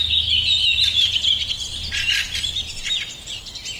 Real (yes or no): yes